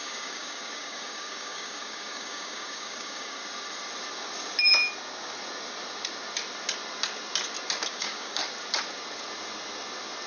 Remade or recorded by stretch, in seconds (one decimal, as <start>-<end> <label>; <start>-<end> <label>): 0.0-3.4 remade; 3.4-7.9 recorded; 7.9-8.4 remade; 8.4-10.3 recorded